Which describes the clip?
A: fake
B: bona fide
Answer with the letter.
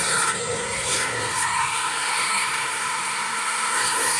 A